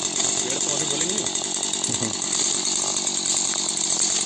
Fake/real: real